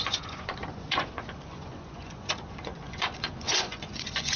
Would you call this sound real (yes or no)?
no